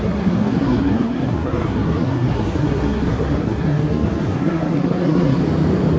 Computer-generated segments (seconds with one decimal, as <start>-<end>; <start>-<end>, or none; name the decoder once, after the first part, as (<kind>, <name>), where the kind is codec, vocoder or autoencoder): 0.0-5.4 (codec, SNAC)